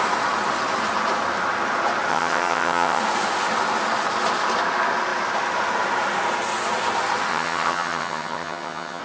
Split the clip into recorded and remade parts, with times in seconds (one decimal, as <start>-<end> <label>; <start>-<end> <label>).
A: 0.0-2.1 recorded; 2.1-3.0 remade; 3.0-7.3 recorded; 7.3-9.0 remade